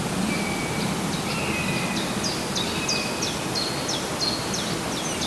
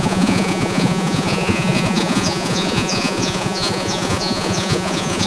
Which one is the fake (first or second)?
second